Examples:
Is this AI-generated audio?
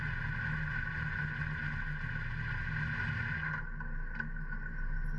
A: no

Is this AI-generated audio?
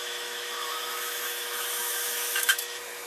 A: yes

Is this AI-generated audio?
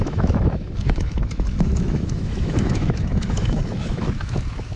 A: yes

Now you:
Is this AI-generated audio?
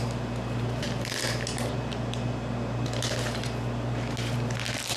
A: no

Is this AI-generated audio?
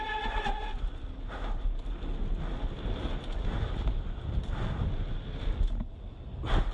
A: no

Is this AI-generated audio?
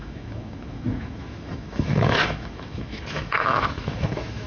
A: yes